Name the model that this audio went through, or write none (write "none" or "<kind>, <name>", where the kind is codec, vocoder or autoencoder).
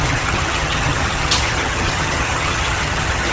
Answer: vocoder, HiFi-GAN